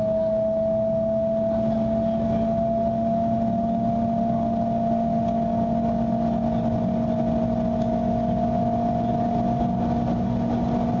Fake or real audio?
real